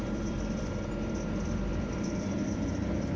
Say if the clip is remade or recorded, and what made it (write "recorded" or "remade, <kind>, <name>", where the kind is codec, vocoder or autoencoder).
remade, vocoder, BigVGAN v2